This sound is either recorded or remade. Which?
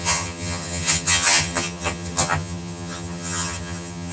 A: remade